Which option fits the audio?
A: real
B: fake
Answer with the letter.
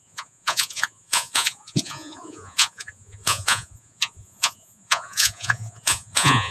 B